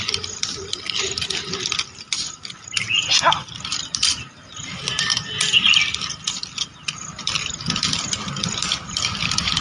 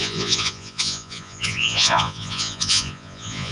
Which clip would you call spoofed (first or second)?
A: second